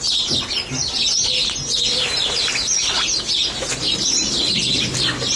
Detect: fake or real real